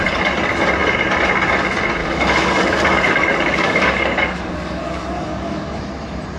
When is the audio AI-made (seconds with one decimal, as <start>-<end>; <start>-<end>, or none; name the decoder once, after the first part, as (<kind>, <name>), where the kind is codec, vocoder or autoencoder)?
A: 2.0-5.8 (codec, DAC)